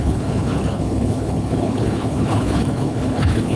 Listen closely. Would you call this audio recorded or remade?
remade